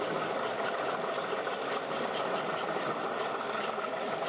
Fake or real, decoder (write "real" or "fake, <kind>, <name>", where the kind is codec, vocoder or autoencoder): real